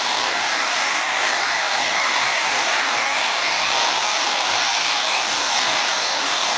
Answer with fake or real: fake